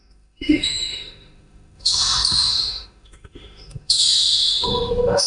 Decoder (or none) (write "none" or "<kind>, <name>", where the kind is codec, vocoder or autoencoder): autoencoder, DAC-VAE